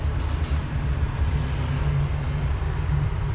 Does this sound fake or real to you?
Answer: real